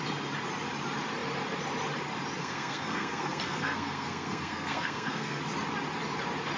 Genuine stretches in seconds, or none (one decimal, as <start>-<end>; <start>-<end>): 0.0-2.4; 5.4-6.6